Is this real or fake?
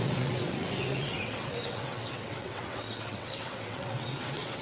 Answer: fake